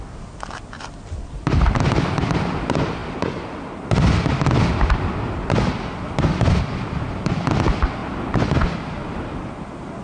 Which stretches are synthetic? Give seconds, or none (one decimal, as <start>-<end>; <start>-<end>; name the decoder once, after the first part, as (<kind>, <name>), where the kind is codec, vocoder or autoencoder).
none